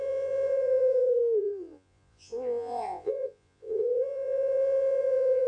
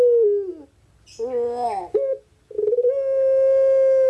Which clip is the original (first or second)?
second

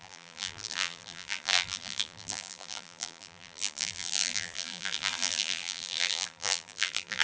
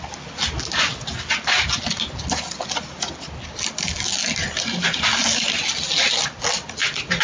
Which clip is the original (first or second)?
second